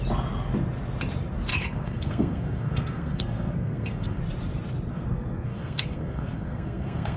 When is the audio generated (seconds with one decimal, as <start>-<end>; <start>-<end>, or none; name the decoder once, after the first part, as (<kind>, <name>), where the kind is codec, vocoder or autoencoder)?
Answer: 1.5-4.2 (codec, SNAC); 4.9-7.2